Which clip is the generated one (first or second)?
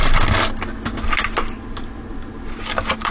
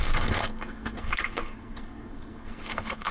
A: second